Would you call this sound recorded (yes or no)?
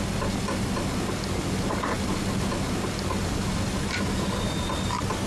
yes